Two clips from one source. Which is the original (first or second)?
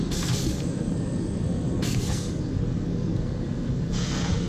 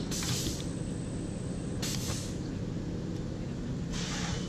second